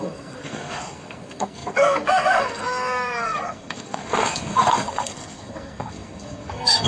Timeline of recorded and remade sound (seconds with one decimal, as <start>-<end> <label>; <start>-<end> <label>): 0.0-6.9 remade